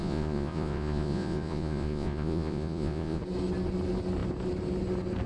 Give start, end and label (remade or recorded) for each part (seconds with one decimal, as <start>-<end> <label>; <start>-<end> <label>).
0.0-3.2 remade; 3.2-5.3 recorded